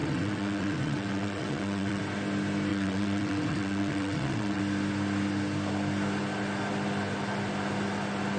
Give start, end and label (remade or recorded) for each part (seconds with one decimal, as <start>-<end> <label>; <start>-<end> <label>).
0.0-2.0 remade; 2.0-2.7 recorded; 2.7-4.6 remade; 4.6-8.4 recorded